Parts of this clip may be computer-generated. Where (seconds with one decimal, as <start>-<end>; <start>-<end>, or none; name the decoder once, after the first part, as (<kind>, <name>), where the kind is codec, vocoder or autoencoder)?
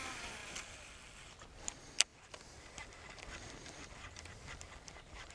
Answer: none